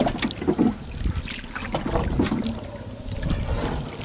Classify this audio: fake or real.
real